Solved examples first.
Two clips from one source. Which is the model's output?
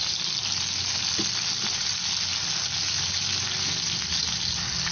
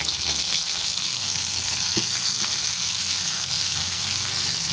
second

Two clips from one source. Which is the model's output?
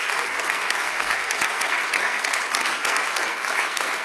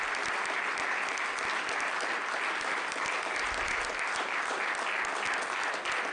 first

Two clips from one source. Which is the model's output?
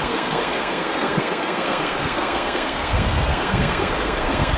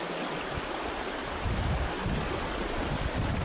first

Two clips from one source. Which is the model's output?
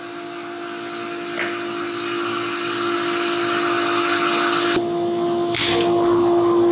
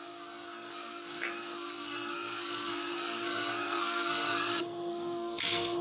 second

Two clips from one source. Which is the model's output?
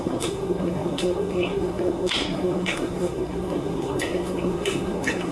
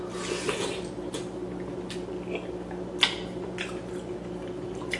first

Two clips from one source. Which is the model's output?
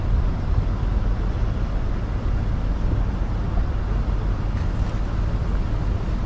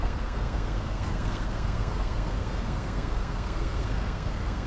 second